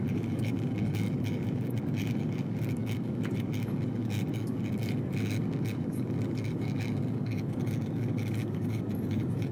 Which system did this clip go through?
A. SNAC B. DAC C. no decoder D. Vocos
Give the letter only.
B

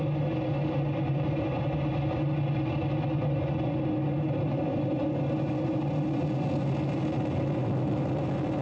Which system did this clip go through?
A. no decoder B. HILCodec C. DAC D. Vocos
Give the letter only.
A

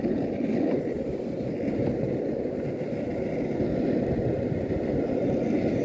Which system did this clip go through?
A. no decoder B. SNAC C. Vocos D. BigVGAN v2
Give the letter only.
D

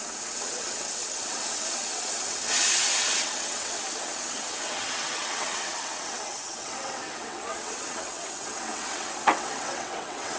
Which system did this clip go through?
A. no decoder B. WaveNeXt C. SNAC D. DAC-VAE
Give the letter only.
B